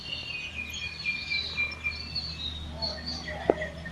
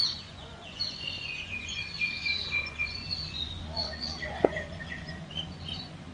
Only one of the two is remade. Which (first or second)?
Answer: second